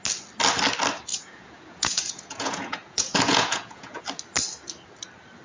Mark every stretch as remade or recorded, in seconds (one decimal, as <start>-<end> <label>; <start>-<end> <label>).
0.0-1.1 recorded; 1.1-4.0 remade; 4.0-5.4 recorded